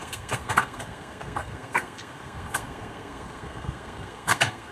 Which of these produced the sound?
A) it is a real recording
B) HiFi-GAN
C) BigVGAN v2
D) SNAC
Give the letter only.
D